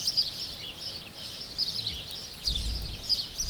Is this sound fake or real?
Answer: real